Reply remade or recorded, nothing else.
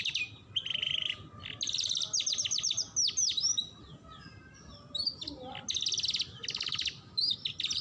recorded